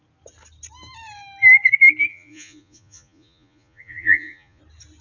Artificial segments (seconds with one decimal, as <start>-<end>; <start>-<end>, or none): 2.1-4.6